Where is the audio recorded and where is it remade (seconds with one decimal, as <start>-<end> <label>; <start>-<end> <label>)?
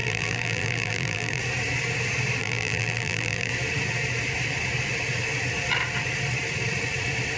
0.0-1.4 remade; 1.4-2.4 recorded; 2.4-3.5 remade; 3.5-7.4 recorded